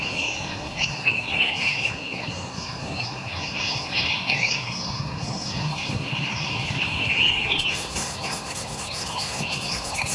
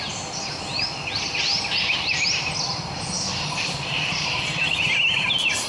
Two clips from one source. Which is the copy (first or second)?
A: first